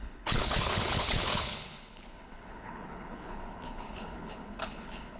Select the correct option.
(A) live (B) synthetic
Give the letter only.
B